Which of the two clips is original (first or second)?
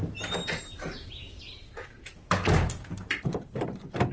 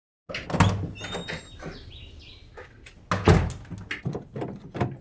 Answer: second